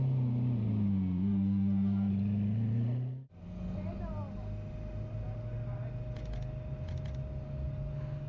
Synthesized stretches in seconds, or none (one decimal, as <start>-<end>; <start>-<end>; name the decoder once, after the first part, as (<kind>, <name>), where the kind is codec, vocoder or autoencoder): 0.9-2.1 (autoencoder, DAC-VAE)